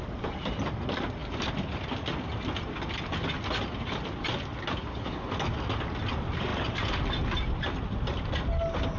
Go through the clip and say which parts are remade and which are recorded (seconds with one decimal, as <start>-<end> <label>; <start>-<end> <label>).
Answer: 0.0-4.8 recorded; 4.8-5.3 remade; 5.3-9.0 recorded